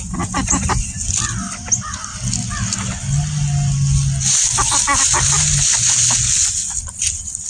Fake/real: real